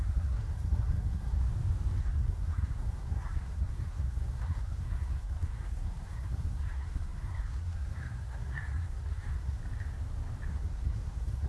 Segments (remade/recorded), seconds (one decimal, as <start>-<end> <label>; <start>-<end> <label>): 0.0-1.4 remade; 1.4-2.0 recorded; 2.0-9.6 remade; 9.6-10.5 recorded; 10.5-11.5 remade